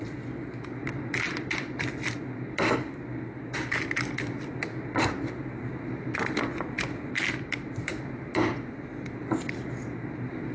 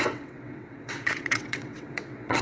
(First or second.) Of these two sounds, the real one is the first